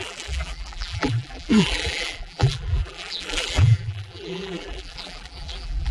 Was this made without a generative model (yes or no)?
no